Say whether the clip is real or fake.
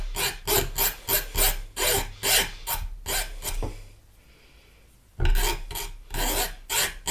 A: real